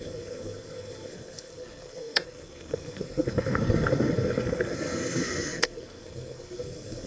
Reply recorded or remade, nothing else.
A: remade